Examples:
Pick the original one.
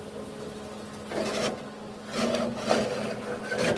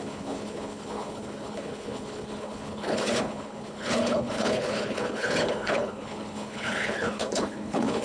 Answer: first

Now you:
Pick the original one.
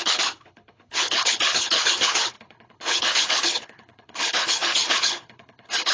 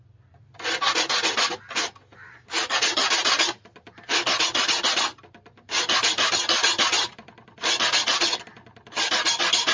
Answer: second